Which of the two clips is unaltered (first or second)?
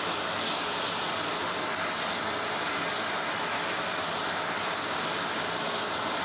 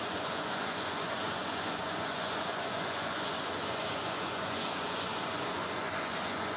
first